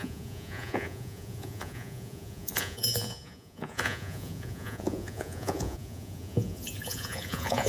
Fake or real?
fake